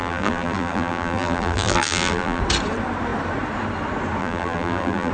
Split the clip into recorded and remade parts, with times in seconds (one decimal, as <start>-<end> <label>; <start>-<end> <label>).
0.0-2.4 remade; 2.4-4.2 recorded; 4.2-5.1 remade